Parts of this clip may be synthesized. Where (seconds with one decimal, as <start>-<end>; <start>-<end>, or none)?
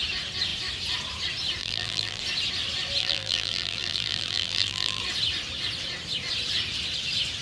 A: 1.6-2.2; 3.0-5.0